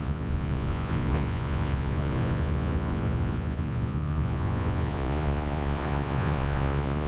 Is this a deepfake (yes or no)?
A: yes